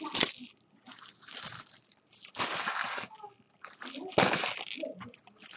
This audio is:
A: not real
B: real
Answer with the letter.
B